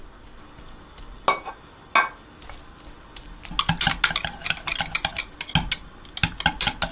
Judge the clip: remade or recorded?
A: recorded